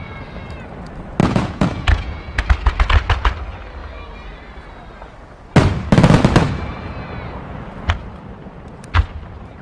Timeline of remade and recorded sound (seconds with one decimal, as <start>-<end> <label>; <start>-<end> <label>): 0.0-1.2 recorded; 1.2-2.4 remade; 2.4-9.6 recorded